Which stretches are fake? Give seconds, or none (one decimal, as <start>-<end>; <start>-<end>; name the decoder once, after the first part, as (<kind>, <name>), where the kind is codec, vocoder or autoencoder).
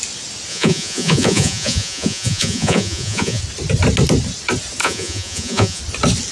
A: 0.5-3.4 (vocoder, Vocos); 4.8-5.8